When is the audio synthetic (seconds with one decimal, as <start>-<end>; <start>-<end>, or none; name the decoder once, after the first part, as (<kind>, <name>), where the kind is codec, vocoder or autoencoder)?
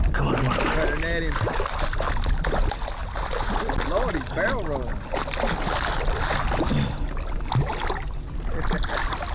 none